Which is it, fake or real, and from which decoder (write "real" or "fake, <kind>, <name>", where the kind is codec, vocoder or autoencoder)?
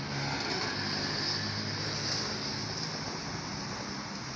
real